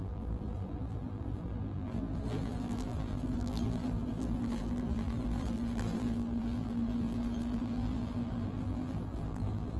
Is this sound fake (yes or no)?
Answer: yes